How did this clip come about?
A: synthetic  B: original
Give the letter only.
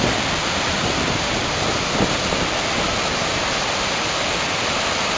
B